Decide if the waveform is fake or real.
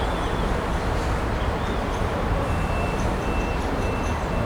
fake